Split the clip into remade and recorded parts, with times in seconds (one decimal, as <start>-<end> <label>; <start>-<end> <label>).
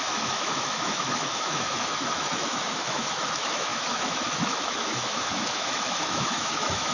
0.0-6.9 remade